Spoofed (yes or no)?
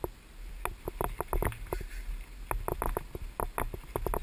no